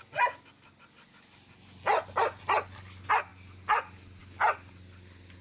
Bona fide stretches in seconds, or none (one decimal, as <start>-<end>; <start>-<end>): 0.0-5.4